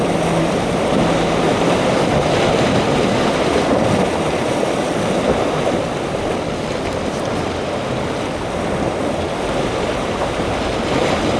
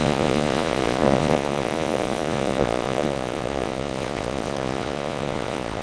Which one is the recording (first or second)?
first